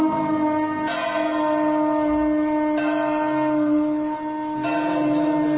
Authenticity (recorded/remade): recorded